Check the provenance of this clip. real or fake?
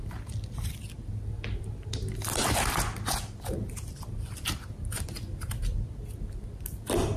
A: real